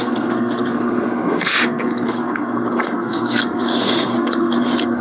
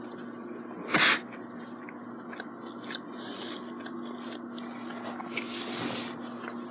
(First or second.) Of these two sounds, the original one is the second